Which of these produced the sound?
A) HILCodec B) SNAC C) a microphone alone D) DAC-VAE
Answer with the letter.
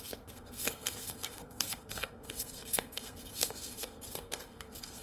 B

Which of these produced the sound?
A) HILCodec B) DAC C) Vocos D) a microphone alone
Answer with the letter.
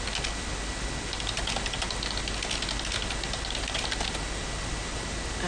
D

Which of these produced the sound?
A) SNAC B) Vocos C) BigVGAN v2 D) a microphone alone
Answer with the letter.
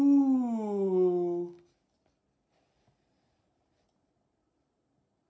D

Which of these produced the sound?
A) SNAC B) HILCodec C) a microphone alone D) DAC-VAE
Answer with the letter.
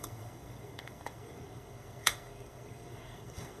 A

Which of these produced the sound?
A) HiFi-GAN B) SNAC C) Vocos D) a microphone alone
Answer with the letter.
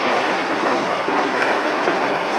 B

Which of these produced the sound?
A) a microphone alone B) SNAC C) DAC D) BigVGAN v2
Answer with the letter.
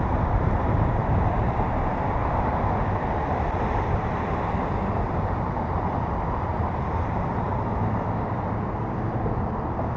D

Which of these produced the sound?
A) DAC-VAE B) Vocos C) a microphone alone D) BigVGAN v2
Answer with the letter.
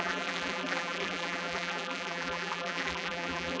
D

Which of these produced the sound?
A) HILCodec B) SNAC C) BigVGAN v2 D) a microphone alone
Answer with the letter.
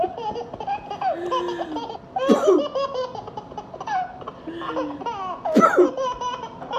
D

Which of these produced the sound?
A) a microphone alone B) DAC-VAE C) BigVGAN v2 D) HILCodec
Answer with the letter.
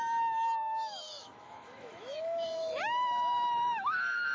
B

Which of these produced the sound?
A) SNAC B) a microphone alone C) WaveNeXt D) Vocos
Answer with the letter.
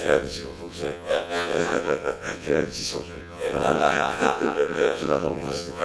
C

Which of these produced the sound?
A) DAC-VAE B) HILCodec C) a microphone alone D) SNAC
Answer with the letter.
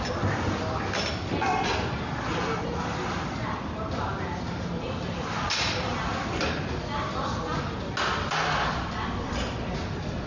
C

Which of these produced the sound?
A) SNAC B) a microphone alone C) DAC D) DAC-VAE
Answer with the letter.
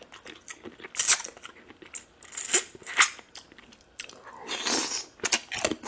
B